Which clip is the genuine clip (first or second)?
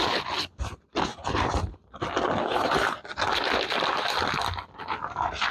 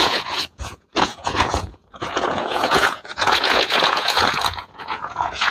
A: first